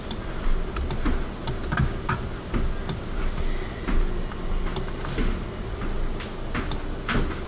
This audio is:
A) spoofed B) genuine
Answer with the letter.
B